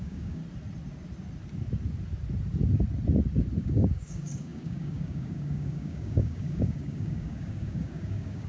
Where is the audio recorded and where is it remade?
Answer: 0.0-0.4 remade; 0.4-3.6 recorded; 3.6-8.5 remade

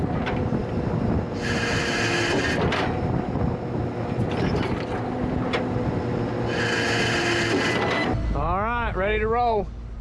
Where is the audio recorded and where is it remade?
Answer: 0.0-10.0 recorded

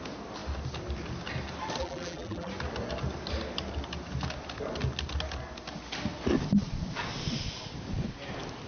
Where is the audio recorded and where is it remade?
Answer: 0.0-1.8 recorded; 1.8-2.5 remade; 2.5-8.7 recorded